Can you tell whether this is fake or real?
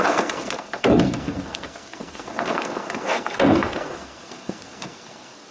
fake